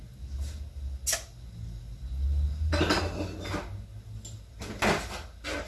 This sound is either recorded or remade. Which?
recorded